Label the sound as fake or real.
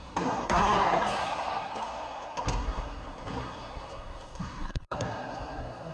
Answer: fake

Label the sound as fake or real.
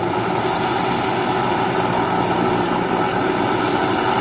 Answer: real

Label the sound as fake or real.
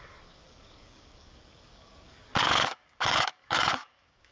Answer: fake